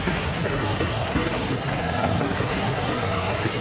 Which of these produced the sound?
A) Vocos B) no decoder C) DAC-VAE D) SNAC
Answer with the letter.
D